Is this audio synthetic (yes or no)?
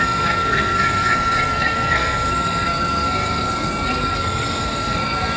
yes